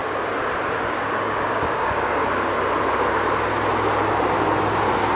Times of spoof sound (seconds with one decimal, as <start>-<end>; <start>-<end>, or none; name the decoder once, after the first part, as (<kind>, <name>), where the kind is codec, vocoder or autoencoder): 0.7-2.2 (codec, DAC)